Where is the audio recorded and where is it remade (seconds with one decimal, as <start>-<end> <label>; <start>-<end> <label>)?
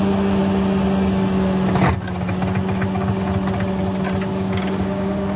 0.0-4.3 recorded; 4.3-5.4 remade